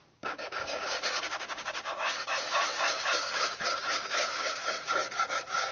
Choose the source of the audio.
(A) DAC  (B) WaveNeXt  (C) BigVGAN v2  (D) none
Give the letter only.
A